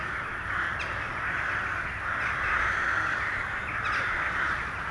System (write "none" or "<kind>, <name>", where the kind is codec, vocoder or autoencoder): none